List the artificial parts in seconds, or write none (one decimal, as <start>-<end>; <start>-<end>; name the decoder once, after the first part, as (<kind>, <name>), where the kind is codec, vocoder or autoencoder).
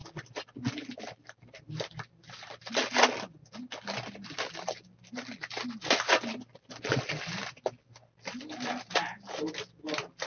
none